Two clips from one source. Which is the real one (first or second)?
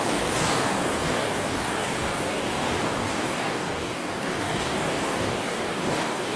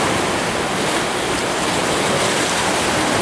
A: second